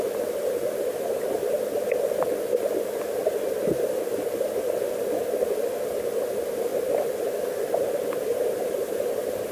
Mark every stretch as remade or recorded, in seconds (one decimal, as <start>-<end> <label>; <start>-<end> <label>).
0.0-6.7 remade; 6.7-7.9 recorded; 7.9-9.5 remade